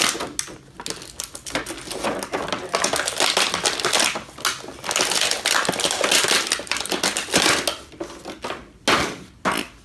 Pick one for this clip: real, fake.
real